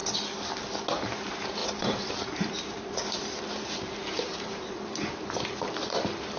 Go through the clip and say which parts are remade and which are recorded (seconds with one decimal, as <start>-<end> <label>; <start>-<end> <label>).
0.0-0.9 recorded; 0.9-6.4 remade